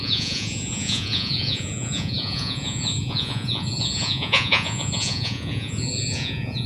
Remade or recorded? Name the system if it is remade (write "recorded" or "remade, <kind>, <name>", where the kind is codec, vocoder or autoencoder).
remade, vocoder, Vocos